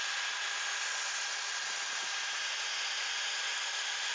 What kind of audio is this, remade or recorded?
recorded